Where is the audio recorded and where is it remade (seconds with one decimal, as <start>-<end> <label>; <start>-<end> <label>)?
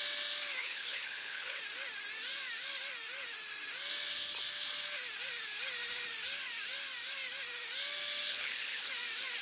0.0-0.6 recorded; 0.6-1.6 remade; 1.6-8.3 recorded; 8.3-8.9 remade; 8.9-9.4 recorded